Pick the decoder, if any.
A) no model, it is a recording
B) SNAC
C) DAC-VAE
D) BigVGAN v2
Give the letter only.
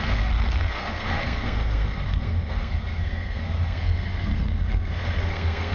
B